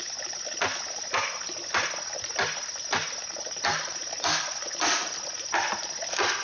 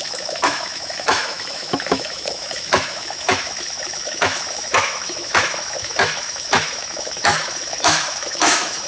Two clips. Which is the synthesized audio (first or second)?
second